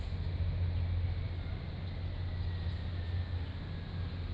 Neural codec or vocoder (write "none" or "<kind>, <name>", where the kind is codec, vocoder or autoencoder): none